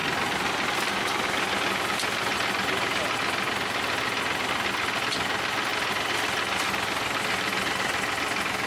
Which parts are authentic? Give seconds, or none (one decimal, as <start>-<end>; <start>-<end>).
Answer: 0.0-8.7